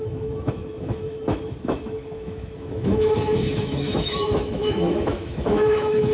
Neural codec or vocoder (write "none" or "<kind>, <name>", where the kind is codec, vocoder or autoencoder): autoencoder, DAC-VAE